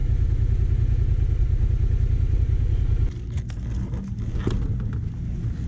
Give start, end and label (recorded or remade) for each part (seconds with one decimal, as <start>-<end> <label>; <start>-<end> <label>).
0.0-5.7 recorded